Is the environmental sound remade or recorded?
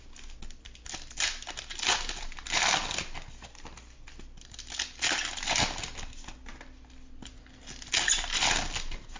recorded